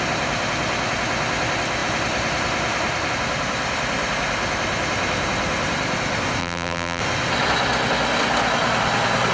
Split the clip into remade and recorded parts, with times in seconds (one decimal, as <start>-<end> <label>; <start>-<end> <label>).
0.0-6.4 recorded; 6.4-7.0 remade; 7.0-9.3 recorded